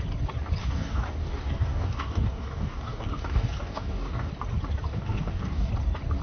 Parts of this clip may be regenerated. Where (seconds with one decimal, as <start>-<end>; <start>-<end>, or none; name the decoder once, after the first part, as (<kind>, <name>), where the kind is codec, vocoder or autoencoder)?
0.6-4.3 (codec, DAC); 4.9-5.7

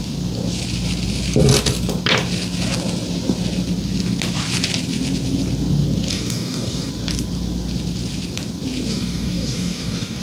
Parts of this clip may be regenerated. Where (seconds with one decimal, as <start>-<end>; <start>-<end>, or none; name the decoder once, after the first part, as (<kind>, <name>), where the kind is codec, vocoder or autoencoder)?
6.1-6.9 (codec, DAC); 8.9-10.2